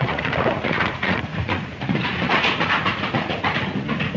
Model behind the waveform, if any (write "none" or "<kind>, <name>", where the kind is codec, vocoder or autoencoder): vocoder, Vocos